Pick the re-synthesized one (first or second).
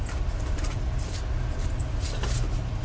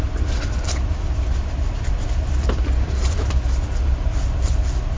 second